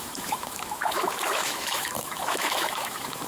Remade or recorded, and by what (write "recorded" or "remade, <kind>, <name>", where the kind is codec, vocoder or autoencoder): remade, autoencoder, DAC-VAE